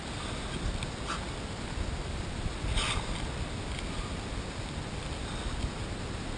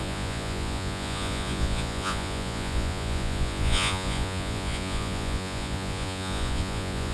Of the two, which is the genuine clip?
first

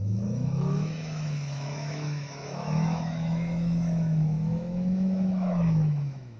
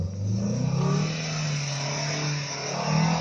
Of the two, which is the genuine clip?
second